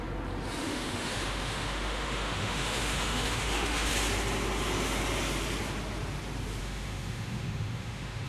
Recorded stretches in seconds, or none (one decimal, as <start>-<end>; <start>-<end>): 0.0-0.6; 3.9-6.6

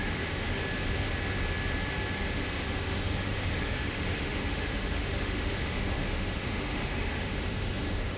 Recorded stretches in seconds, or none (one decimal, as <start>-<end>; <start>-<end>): 0.6-2.7

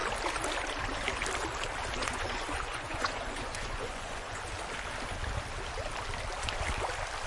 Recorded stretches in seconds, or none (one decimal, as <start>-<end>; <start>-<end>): 0.0-2.0; 4.4-7.3

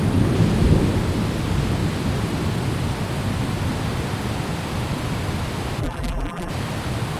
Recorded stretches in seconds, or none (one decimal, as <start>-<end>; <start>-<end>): 0.0-5.8; 6.5-7.2

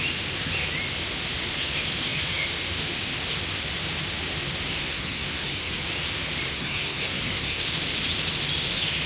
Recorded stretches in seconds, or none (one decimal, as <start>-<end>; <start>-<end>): 0.0-4.8; 5.8-6.5; 7.6-9.1

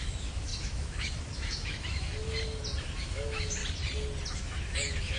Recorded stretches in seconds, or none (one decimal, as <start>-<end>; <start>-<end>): 2.2-2.8; 3.6-4.3

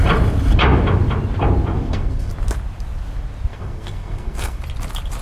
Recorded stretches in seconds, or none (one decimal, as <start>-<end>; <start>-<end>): 0.0-1.7; 2.3-3.5; 4.6-5.2

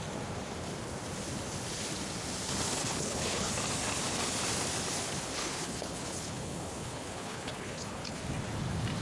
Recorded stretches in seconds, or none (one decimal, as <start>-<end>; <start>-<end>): 0.0-2.8; 3.5-5.4; 8.2-9.0